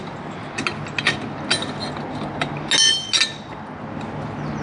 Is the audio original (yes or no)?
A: yes